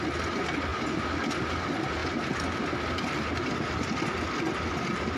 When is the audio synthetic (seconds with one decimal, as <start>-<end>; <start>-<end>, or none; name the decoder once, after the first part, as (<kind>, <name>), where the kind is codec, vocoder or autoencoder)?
none